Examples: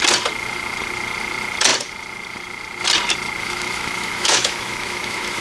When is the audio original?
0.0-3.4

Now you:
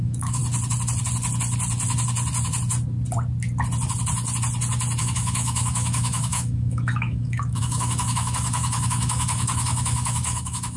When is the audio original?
0.4-5.0